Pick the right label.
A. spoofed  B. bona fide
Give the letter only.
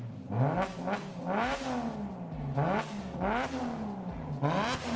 B